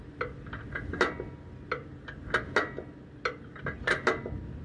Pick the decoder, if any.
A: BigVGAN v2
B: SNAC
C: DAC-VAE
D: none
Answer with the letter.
D